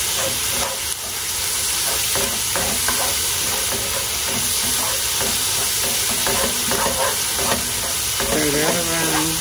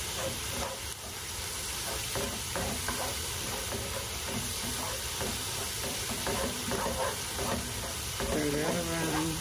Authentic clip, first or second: first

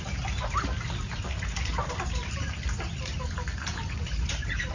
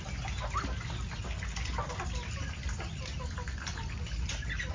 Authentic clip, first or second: second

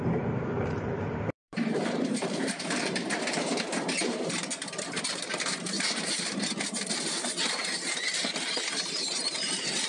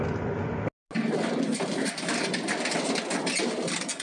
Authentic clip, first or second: second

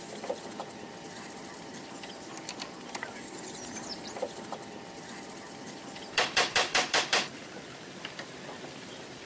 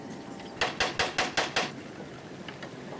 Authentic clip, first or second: second